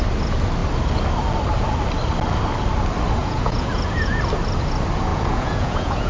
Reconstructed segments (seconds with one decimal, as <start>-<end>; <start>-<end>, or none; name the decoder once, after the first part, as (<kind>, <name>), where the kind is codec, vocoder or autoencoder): 3.2-4.2 (vocoder, Vocos); 5.1-6.1